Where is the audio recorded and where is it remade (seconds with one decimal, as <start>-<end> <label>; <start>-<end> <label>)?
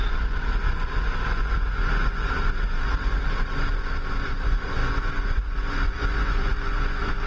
0.0-7.3 remade